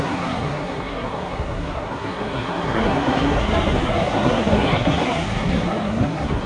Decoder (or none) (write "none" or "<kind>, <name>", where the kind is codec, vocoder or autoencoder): codec, SNAC